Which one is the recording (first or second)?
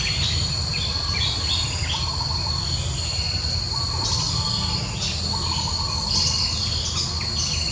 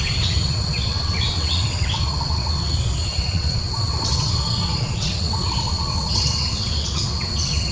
first